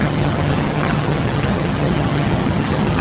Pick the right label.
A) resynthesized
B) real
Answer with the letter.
A